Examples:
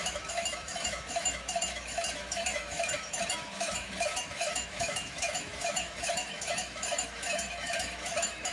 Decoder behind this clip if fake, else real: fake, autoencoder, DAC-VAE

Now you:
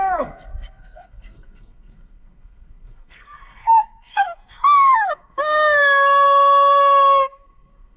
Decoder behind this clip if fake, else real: fake, codec, SNAC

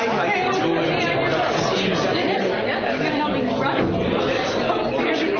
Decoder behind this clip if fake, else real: real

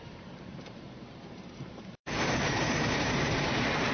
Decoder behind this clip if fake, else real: fake, vocoder, BigVGAN v2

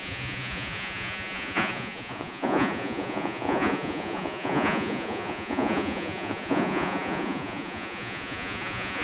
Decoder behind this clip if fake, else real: fake, vocoder, Vocos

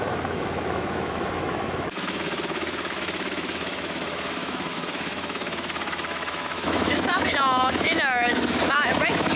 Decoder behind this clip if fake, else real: fake, autoencoder, DAC-VAE